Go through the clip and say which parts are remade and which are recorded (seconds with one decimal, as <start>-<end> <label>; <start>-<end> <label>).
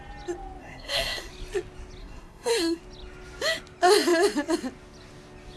0.0-0.6 recorded; 0.6-1.3 remade; 1.3-2.0 recorded; 2.0-2.8 remade; 2.8-5.6 recorded